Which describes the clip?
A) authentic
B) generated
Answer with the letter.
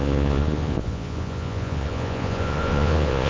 B